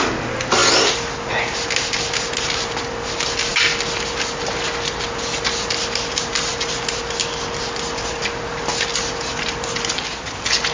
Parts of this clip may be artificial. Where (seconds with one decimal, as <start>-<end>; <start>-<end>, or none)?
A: none